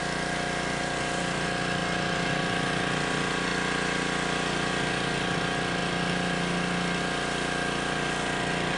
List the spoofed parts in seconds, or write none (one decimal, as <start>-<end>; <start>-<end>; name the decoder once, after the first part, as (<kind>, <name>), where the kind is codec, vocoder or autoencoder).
none